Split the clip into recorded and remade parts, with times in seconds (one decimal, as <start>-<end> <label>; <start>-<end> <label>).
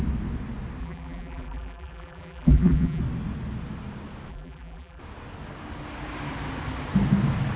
0.0-0.8 recorded; 0.8-3.0 remade; 3.0-4.3 recorded; 4.3-5.0 remade; 5.0-7.6 recorded